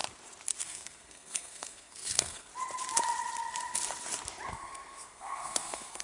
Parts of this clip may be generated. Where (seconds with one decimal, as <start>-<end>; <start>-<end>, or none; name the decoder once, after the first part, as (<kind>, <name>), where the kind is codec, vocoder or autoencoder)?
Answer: 0.6-2.5 (codec, SNAC); 4.5-6.0